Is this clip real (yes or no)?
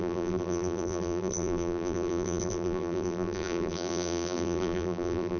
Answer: no